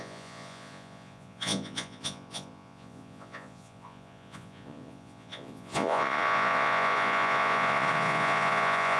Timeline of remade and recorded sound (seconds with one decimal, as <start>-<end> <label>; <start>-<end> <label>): 0.0-9.0 remade